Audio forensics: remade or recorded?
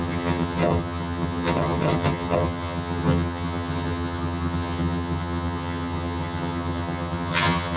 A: remade